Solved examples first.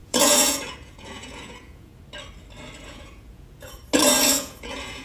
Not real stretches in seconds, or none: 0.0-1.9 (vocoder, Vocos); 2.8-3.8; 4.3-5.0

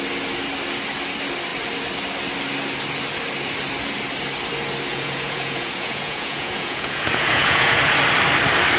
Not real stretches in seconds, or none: 4.9-7.8 (vocoder, Vocos)